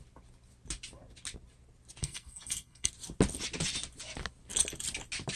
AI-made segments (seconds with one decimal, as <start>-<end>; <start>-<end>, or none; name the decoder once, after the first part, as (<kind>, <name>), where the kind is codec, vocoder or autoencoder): 2.0-2.9 (codec, SNAC)